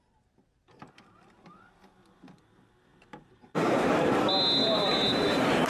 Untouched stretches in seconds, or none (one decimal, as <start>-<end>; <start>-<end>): 0.0-2.9; 4.1-4.6